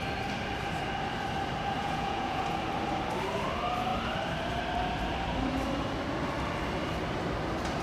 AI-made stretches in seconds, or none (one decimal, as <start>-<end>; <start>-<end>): 1.8-2.4